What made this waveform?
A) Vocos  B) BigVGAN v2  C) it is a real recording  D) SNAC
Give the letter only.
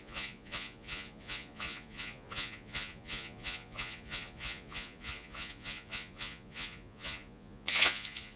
A